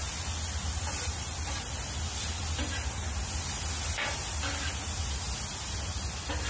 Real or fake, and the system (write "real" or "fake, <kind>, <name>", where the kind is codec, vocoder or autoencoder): real